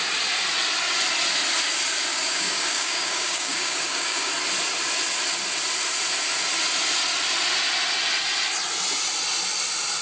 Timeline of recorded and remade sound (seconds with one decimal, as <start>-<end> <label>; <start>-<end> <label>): 0.0-2.1 recorded; 2.1-4.3 remade; 4.3-10.0 recorded

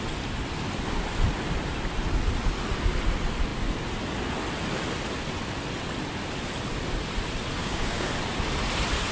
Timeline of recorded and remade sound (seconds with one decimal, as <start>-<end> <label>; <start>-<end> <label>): 0.0-7.6 recorded; 7.6-8.1 remade; 8.1-9.1 recorded

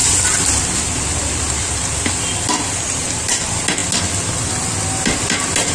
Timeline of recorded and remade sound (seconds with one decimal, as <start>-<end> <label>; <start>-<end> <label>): 0.0-5.7 recorded

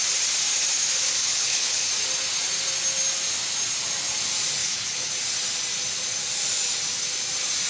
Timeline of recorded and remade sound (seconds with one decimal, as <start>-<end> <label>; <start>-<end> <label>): 0.0-1.2 recorded; 1.2-1.9 remade; 1.9-4.6 recorded; 4.6-5.1 remade; 5.1-7.7 recorded

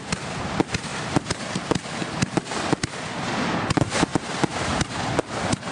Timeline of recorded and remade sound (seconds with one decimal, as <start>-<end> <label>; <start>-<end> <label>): 0.0-0.9 recorded; 0.9-1.7 remade; 1.7-4.1 recorded; 4.1-5.1 remade; 5.1-5.7 recorded